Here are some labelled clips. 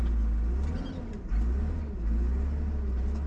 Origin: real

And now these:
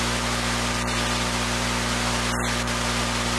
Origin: real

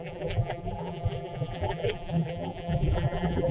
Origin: fake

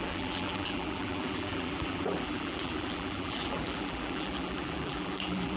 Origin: fake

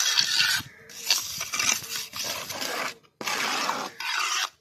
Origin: real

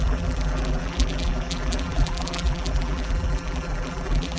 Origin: fake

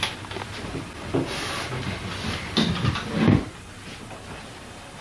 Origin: real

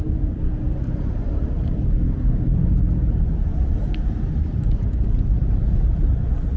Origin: fake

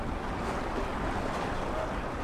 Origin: real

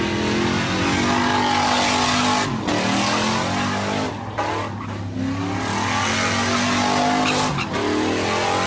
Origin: real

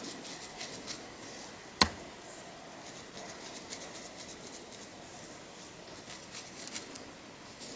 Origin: real